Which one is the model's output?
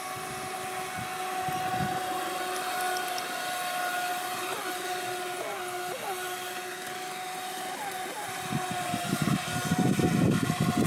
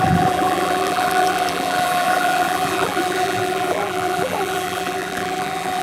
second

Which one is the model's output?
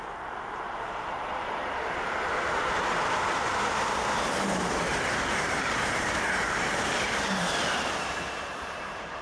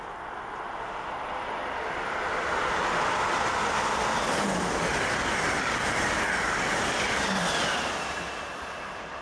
first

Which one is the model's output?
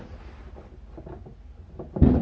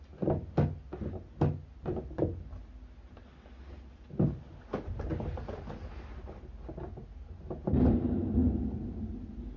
first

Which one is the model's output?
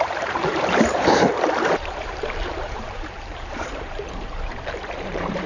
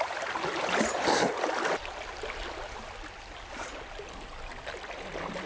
first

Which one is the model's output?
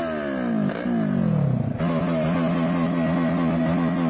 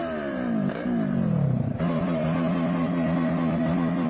second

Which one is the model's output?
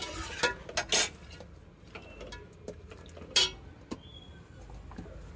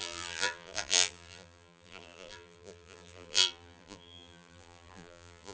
second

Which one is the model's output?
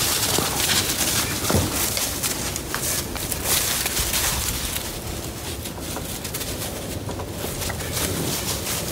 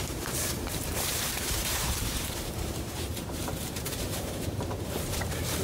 second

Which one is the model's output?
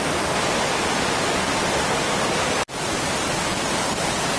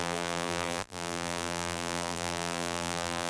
second